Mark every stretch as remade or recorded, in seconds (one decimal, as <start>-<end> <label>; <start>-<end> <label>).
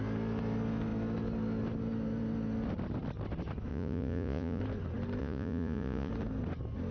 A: 0.0-3.7 recorded; 3.7-4.6 remade; 4.6-5.2 recorded; 5.2-6.1 remade; 6.1-6.9 recorded